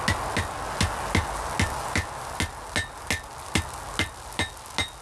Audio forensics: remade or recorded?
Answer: recorded